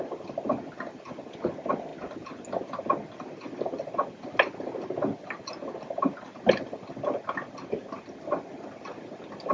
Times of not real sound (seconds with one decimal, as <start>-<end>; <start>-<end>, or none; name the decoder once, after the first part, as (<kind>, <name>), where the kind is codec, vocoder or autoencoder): none